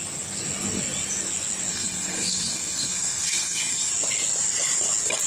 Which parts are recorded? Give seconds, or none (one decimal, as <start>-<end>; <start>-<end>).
0.0-1.7; 3.9-5.3